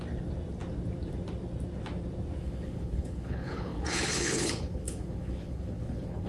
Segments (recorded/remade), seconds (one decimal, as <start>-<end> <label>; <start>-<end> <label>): 0.0-2.4 recorded; 2.4-6.3 remade